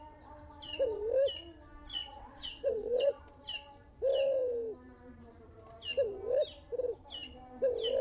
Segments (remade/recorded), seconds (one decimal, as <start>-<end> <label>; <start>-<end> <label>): 0.0-1.9 recorded; 1.9-3.2 remade; 3.2-8.0 recorded